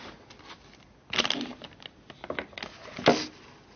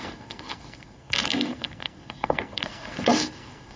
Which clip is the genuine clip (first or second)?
first